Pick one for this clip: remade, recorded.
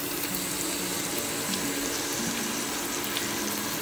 recorded